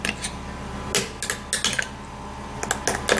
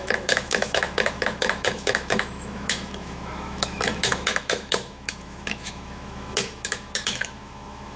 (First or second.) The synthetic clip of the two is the second